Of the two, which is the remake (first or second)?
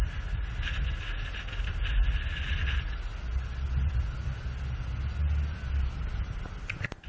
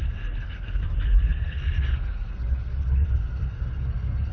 second